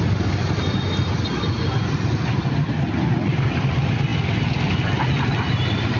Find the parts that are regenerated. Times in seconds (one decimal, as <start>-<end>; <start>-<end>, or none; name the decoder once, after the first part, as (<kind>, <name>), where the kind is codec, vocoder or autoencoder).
none